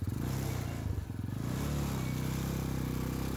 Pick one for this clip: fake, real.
real